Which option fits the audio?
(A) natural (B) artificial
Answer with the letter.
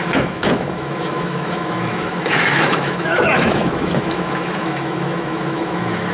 B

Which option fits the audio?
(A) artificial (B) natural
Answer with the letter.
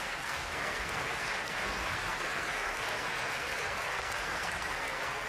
A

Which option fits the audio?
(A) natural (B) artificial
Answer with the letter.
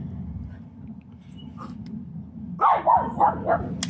A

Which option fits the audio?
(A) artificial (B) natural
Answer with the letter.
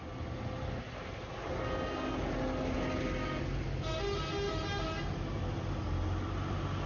B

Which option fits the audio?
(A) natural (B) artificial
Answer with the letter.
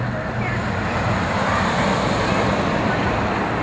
A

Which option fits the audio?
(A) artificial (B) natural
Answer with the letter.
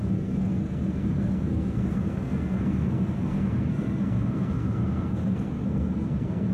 A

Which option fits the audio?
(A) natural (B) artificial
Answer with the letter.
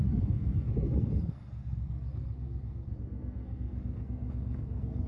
B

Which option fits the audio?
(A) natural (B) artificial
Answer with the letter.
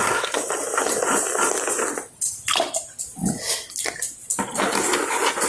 A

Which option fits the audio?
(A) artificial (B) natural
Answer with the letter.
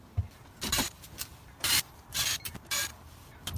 B